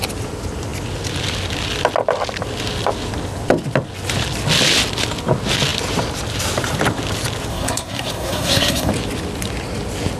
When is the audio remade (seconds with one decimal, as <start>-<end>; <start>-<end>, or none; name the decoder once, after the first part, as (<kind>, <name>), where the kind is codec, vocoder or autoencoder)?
7.5-8.9 (codec, SNAC)